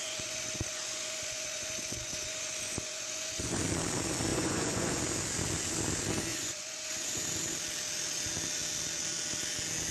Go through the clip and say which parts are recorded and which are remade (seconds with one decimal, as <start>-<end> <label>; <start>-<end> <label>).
0.0-3.6 remade; 3.6-4.3 recorded; 4.3-5.0 remade; 5.0-6.3 recorded; 6.3-7.2 remade; 7.2-9.9 recorded